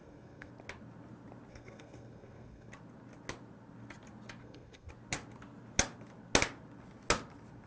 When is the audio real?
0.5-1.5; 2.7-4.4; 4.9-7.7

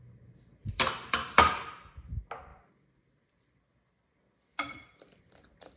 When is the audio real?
0.0-0.6; 1.6-2.5

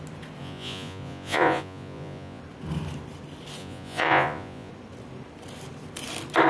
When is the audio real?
0.0-0.4; 2.4-3.6; 4.7-6.5